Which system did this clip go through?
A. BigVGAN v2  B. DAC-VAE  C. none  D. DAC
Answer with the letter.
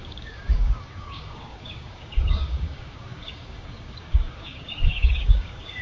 D